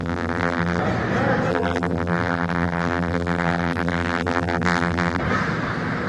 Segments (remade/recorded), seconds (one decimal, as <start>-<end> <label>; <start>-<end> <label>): 0.0-0.8 remade; 0.8-1.5 recorded; 1.5-5.2 remade; 5.2-6.1 recorded